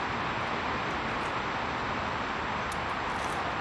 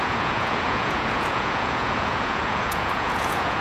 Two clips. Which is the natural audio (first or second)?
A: first